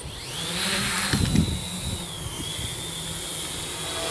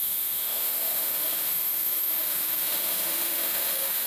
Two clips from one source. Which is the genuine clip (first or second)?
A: first